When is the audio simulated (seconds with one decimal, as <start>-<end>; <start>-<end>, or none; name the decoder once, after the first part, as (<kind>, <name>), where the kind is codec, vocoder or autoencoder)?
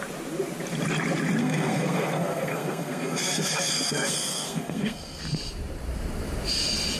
1.4-5.2 (codec, SNAC)